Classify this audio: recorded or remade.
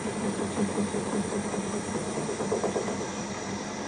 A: recorded